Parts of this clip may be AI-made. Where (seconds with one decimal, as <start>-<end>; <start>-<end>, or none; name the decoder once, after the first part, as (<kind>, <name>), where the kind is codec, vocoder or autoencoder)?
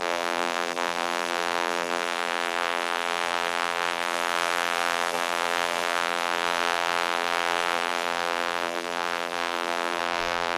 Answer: 0.0-10.6 (vocoder, BigVGAN v2)